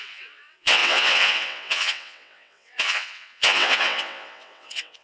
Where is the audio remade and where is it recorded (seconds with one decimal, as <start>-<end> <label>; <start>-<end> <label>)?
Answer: 0.0-5.0 remade

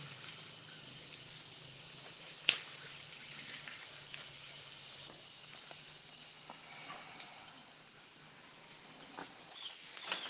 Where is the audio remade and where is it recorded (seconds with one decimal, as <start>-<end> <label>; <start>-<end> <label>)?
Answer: 0.0-9.2 recorded; 9.2-10.3 remade

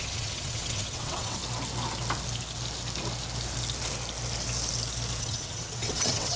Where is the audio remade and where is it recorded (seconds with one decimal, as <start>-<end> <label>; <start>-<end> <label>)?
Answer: 0.0-1.4 remade; 1.4-5.2 recorded; 5.2-6.4 remade

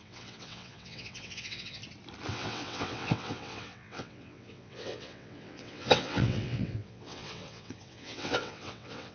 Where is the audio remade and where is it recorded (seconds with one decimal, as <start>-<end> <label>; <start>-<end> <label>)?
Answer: 0.0-1.8 remade; 1.8-2.3 recorded; 2.3-9.1 remade

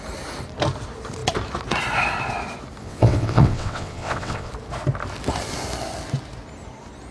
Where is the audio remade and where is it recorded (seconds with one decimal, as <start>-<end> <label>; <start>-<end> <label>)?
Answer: 0.0-2.8 recorded; 2.8-4.5 remade; 4.5-7.1 recorded

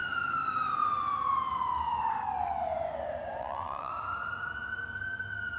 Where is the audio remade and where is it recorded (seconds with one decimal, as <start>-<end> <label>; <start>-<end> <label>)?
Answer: 0.0-3.4 recorded; 3.4-3.9 remade; 3.9-5.6 recorded

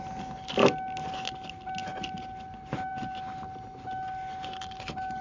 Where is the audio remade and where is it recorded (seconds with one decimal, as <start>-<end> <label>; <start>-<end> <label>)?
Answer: 0.0-5.2 recorded